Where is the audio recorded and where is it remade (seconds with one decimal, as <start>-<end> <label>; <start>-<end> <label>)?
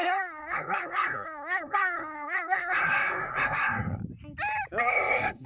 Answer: 0.0-4.0 remade; 4.0-4.8 recorded; 4.8-5.5 remade